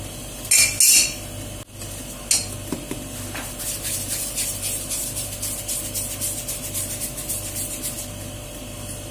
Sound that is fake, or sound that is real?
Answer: real